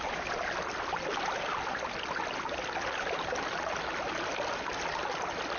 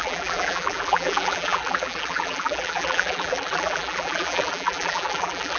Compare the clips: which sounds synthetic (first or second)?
second